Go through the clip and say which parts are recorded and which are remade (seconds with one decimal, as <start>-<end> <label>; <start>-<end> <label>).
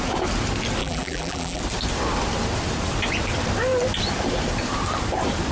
0.0-0.8 recorded; 0.8-1.6 remade; 1.6-5.5 recorded